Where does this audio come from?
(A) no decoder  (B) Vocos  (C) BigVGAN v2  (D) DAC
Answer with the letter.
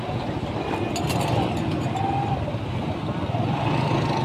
A